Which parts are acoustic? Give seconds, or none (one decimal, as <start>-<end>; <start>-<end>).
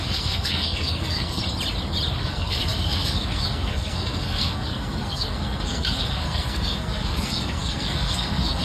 1.4-2.2